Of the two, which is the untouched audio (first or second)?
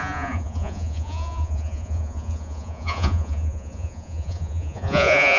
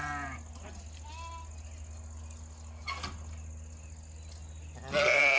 second